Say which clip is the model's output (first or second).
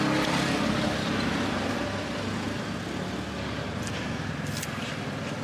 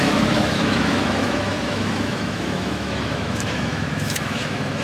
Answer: second